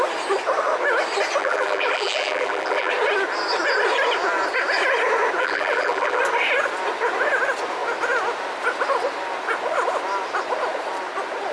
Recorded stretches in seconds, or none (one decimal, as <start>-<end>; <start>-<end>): 0.0-1.4; 2.9-5.4; 6.2-11.5